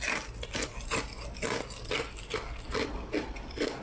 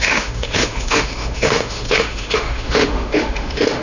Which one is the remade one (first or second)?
second